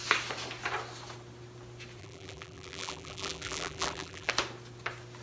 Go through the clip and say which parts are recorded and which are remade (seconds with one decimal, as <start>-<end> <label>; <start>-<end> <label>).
0.0-2.0 recorded; 2.0-4.3 remade; 4.3-5.2 recorded

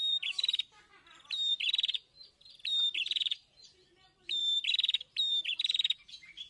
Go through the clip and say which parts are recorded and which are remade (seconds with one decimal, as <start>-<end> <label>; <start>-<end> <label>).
0.0-6.5 remade

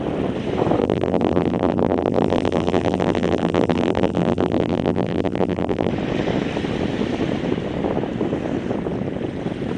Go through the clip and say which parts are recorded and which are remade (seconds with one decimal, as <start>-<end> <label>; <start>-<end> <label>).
0.0-0.8 recorded; 0.8-5.9 remade; 5.9-9.8 recorded

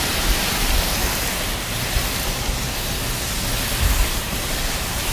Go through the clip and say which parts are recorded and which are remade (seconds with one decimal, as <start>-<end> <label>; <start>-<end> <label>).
0.0-1.0 remade; 1.0-4.1 recorded; 4.1-5.1 remade

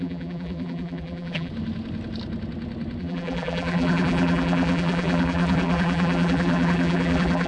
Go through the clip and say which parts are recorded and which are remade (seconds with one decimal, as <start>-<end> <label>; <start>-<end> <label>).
0.0-1.5 remade; 1.5-3.0 recorded; 3.0-7.5 remade

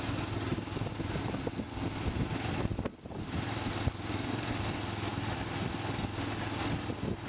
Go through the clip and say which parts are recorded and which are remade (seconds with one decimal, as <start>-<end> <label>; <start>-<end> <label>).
0.0-0.5 recorded; 0.5-1.7 remade; 1.7-2.9 recorded; 2.9-4.5 remade; 4.5-7.3 recorded

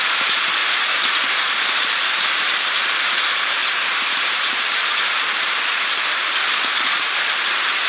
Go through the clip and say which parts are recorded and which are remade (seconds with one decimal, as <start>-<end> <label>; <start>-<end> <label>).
0.0-0.6 remade; 0.6-1.3 recorded; 1.3-7.9 remade